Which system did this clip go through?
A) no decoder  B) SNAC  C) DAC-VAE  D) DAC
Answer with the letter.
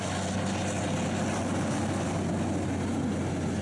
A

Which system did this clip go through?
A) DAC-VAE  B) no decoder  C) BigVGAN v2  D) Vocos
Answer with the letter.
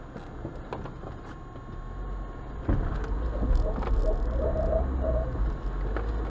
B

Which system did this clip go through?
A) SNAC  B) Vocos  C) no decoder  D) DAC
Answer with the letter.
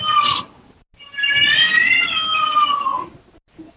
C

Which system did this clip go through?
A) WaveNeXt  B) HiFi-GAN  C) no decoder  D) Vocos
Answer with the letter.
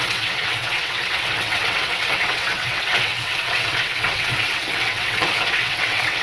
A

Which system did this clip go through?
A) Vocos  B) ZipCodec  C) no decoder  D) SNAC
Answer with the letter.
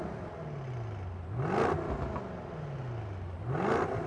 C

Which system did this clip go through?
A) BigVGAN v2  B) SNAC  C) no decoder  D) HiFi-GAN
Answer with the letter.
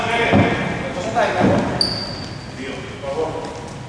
C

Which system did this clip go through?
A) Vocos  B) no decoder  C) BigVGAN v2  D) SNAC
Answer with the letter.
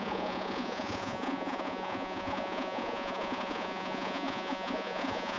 A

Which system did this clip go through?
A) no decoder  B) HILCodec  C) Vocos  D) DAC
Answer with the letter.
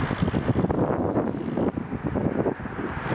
A